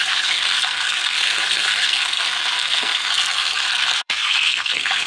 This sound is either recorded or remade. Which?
remade